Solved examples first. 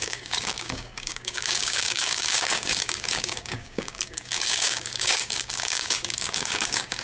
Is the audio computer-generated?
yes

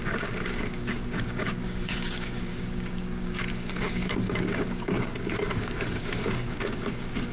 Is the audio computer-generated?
yes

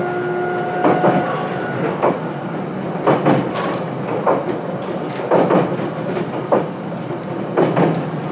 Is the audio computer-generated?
no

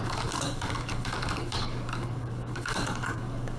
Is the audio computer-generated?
yes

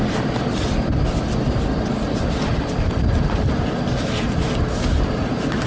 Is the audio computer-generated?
no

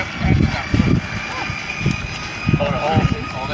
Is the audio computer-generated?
no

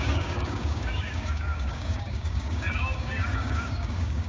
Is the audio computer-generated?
yes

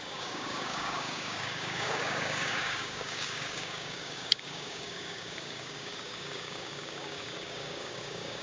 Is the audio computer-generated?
yes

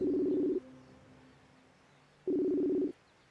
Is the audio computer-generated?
no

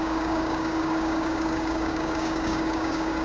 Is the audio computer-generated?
yes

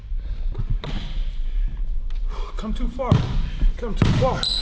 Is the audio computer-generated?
no